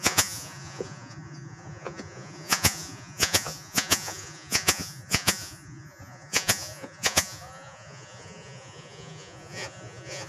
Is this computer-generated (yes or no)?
yes